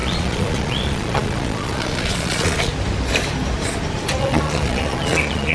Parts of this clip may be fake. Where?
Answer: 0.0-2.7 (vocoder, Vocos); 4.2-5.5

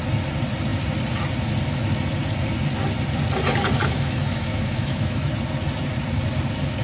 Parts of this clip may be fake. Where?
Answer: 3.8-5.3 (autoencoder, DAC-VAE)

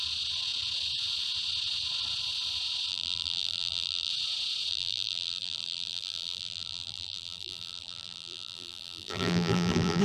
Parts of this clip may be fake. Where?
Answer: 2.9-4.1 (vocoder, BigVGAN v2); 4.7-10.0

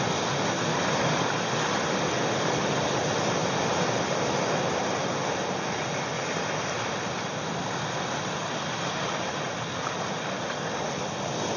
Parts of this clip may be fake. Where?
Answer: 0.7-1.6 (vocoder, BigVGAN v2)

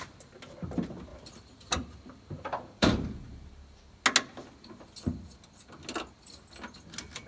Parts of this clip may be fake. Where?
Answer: 1.1-4.0 (vocoder, BigVGAN v2)

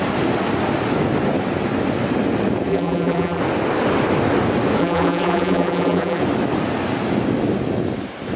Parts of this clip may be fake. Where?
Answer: 2.7-3.4 (vocoder, BigVGAN v2); 4.8-6.2